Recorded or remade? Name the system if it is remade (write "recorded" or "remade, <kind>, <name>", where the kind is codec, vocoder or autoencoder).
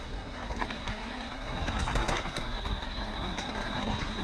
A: remade, codec, SNAC